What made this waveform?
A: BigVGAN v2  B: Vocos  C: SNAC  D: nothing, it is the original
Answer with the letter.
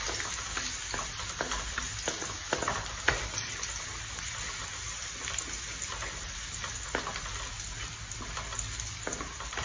D